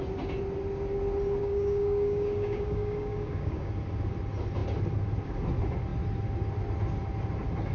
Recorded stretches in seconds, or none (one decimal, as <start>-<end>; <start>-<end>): 0.0-1.4; 3.7-7.7